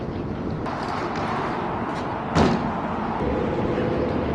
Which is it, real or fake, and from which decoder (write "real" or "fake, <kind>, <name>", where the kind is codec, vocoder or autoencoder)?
real